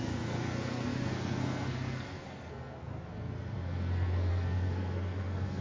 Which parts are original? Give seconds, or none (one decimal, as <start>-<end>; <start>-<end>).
none